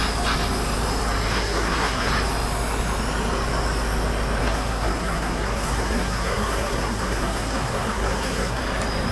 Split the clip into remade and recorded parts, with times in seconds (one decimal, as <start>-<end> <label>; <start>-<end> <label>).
0.0-1.3 recorded; 1.3-2.1 remade; 2.1-4.4 recorded; 4.4-8.6 remade; 8.6-9.1 recorded